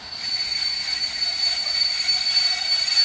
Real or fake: real